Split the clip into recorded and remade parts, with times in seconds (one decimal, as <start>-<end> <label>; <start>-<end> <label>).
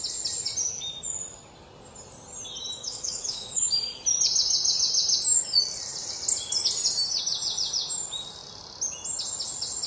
0.0-2.8 recorded; 2.8-3.7 remade; 3.7-9.9 recorded